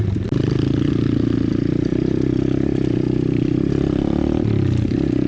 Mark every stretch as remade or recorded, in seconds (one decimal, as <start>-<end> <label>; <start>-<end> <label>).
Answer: 0.0-1.9 recorded; 1.9-3.7 remade; 3.7-5.3 recorded

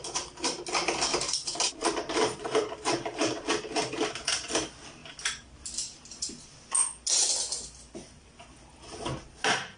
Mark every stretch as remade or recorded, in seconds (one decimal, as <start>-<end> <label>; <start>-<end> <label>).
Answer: 0.0-1.1 recorded; 1.1-3.5 remade; 3.5-9.8 recorded

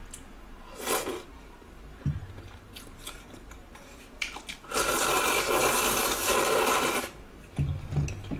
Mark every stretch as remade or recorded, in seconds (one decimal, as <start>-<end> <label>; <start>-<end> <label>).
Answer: 0.0-1.1 recorded; 1.1-4.4 remade; 4.4-8.4 recorded

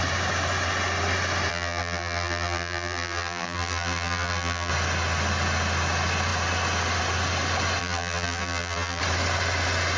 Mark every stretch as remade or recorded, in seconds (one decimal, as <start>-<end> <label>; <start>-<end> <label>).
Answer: 0.0-1.5 recorded; 1.5-4.7 remade; 4.7-7.8 recorded; 7.8-9.0 remade; 9.0-10.0 recorded

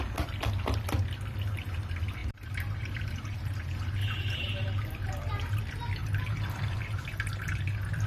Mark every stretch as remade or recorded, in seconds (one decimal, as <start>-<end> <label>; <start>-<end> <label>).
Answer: 0.0-2.2 recorded; 2.2-5.6 remade; 5.6-6.0 recorded; 6.0-7.6 remade; 7.6-8.1 recorded

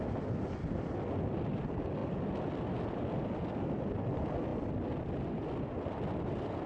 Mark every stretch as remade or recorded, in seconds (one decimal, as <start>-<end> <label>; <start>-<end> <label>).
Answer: 0.0-6.7 recorded

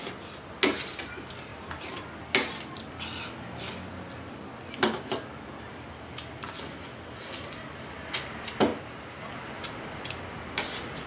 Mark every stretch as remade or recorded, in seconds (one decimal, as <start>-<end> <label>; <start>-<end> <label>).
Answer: 0.0-1.5 recorded; 1.5-2.0 remade; 2.0-8.7 recorded; 8.7-9.2 remade; 9.2-11.1 recorded